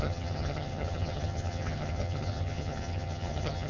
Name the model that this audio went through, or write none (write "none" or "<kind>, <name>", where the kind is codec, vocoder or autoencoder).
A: vocoder, HiFi-GAN